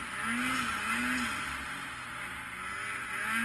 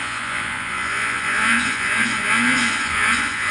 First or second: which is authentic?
first